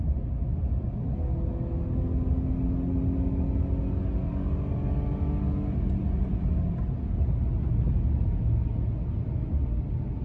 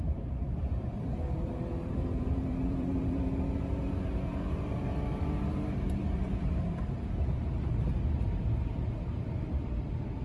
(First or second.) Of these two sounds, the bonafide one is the first